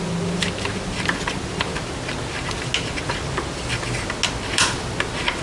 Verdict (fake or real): real